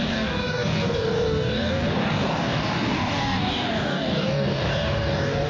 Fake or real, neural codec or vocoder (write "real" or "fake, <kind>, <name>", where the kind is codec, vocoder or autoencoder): fake, codec, DAC